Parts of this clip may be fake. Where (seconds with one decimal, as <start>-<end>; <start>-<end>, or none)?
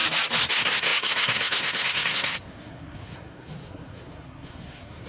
0.5-5.1